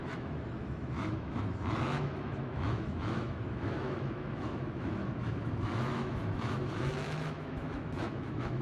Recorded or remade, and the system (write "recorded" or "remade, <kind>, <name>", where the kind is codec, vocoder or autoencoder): remade, autoencoder, DAC-VAE